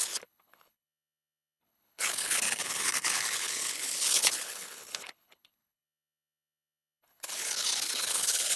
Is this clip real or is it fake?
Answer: fake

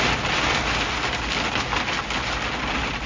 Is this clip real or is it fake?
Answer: real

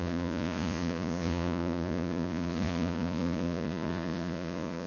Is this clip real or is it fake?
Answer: fake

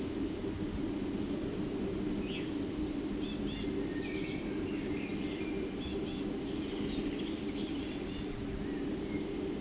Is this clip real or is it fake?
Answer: real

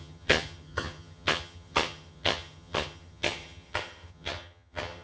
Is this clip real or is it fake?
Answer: fake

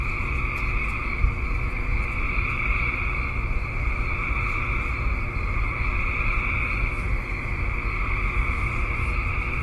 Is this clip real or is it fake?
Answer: fake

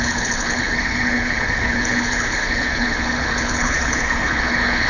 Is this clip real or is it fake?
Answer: fake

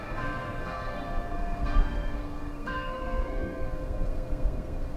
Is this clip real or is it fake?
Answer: fake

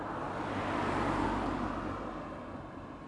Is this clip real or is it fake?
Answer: real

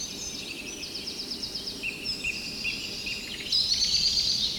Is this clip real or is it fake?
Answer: real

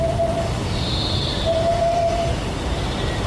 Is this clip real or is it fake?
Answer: real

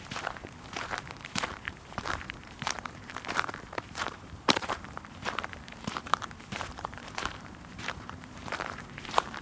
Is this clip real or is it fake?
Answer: fake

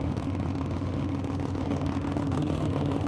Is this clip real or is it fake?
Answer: fake